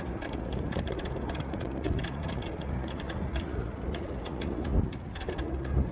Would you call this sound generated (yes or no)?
yes